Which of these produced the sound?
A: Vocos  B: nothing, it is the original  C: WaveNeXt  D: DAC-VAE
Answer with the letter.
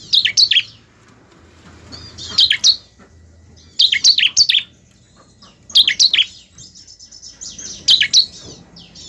B